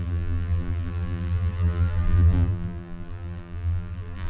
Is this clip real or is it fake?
fake